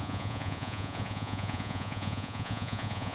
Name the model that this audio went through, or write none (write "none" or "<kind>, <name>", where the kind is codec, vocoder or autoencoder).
vocoder, Vocos